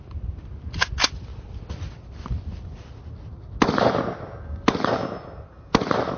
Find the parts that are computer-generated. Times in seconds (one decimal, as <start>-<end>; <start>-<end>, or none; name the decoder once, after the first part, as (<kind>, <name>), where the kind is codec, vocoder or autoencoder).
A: none